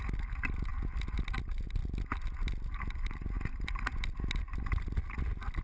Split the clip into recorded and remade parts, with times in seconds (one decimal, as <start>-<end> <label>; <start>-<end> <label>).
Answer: 0.0-5.6 recorded